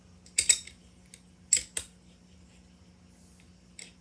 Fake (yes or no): no